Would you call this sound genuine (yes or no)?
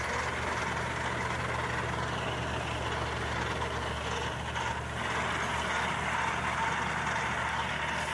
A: yes